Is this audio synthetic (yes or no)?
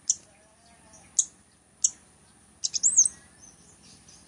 no